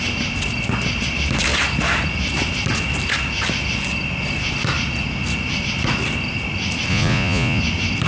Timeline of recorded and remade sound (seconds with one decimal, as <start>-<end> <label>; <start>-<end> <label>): 0.0-6.9 recorded; 6.9-7.6 remade; 7.6-8.1 recorded